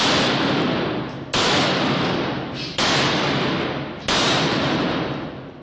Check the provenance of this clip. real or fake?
real